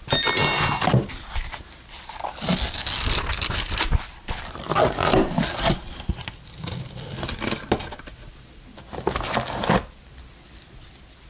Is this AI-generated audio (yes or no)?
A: no